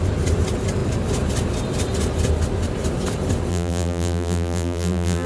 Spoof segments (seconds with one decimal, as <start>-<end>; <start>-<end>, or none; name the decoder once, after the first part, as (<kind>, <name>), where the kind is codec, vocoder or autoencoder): 3.5-5.3 (vocoder, BigVGAN v2)

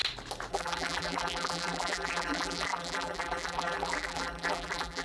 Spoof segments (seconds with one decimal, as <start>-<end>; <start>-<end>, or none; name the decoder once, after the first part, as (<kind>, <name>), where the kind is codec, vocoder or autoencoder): 0.5-5.0 (vocoder, BigVGAN v2)